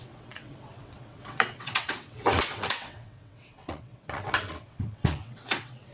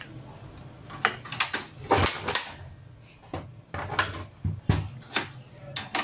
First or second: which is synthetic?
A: first